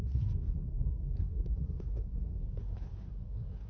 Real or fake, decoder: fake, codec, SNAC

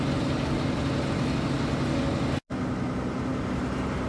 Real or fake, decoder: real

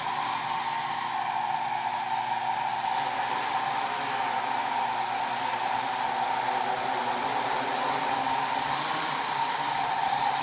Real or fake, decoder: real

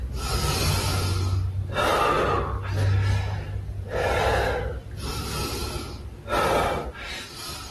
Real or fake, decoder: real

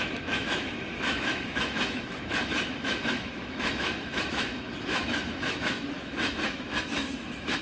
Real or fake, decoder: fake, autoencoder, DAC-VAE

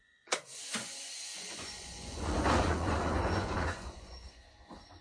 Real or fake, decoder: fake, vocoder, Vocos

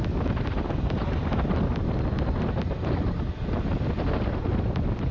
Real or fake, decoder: real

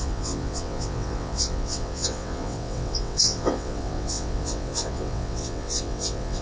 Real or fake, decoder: fake, vocoder, WaveNeXt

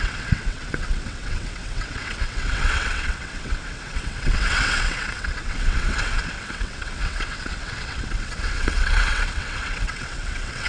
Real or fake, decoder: fake, vocoder, WaveNeXt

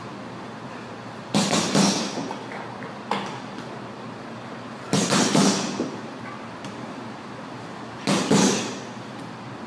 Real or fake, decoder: real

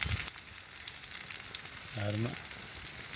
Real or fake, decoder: real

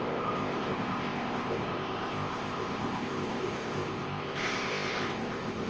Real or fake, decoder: fake, codec, ZipCodec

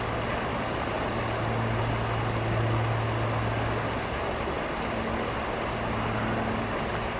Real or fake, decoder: real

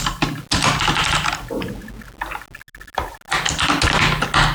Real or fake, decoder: real